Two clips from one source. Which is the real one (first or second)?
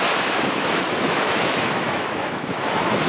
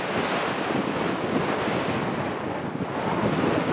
second